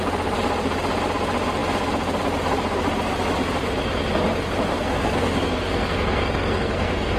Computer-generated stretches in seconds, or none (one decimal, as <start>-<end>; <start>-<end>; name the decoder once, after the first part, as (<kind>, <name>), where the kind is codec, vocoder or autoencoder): 4.7-7.2 (codec, SNAC)